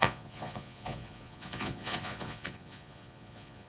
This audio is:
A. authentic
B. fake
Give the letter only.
B